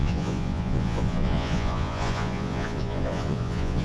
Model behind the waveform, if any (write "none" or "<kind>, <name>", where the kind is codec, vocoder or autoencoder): vocoder, Vocos